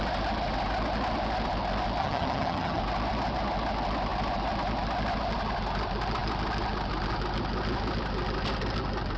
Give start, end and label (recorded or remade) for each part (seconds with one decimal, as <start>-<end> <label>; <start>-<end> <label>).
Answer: 0.0-2.0 recorded; 2.0-2.8 remade; 2.8-9.2 recorded